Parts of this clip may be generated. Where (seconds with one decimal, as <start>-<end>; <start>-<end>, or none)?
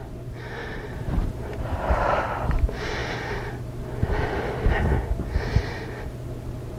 0.6-2.6; 5.6-6.1